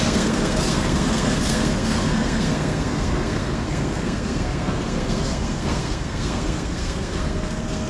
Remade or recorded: remade